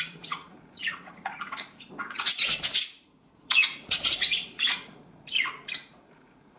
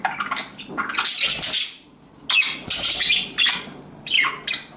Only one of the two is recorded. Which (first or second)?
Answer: second